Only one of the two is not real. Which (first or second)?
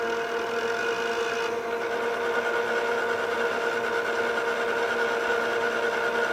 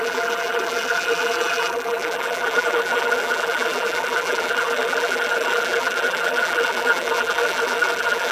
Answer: second